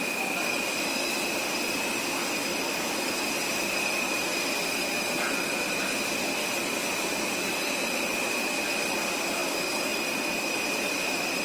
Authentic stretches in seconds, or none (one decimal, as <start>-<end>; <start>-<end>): none